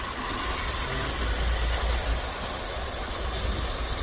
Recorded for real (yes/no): yes